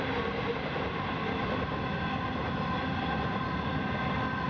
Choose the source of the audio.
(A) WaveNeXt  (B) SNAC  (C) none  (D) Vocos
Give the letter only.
C